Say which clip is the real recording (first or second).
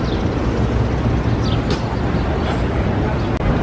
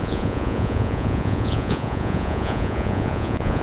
first